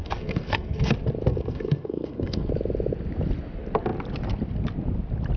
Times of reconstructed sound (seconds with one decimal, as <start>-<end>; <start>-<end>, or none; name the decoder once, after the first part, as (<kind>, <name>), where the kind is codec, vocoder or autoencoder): 0.0-0.9 (codec, SNAC); 1.3-2.5